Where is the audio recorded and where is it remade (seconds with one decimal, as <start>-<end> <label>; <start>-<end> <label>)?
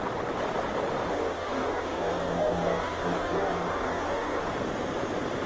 0.0-1.1 recorded; 1.1-4.4 remade; 4.4-5.5 recorded